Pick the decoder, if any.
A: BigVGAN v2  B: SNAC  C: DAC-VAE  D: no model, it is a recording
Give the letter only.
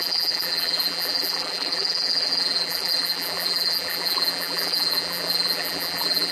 A